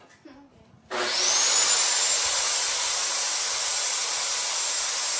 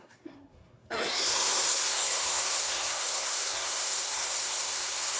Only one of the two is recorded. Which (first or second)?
first